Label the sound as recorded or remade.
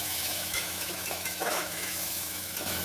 remade